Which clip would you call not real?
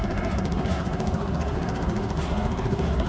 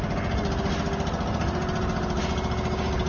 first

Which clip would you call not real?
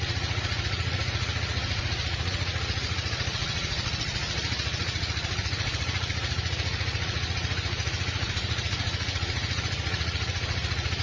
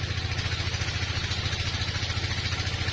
first